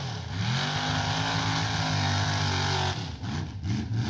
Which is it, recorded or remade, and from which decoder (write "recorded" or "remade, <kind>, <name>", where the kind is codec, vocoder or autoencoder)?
recorded